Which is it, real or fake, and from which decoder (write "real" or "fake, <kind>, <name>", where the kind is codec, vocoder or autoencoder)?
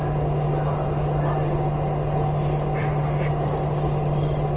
real